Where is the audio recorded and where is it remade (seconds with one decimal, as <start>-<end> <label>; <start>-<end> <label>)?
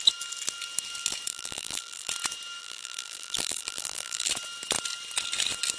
0.0-1.3 recorded; 1.3-2.1 remade; 2.1-2.6 recorded; 2.6-4.3 remade; 4.3-5.8 recorded